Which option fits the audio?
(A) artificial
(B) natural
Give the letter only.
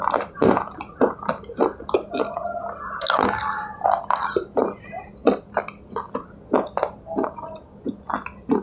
B